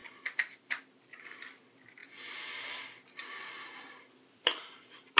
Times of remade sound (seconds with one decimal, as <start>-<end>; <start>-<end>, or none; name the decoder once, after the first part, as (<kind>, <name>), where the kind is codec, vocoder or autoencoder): 0.0-2.0 (vocoder, BigVGAN v2); 2.8-3.2; 4.0-5.2